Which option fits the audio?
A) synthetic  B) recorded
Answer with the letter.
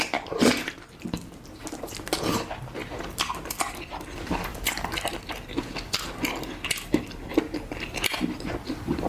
B